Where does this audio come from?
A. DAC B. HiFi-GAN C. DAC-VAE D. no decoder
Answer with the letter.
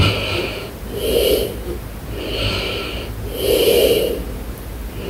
D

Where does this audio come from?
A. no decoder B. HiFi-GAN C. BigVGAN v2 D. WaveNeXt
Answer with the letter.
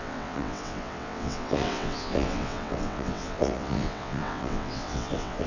D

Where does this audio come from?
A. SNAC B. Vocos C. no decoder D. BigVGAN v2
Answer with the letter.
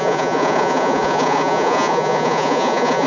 B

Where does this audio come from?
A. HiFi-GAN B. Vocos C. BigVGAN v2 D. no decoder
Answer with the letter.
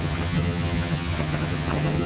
A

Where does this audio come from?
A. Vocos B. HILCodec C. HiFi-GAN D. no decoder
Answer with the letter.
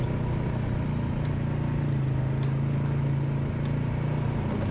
D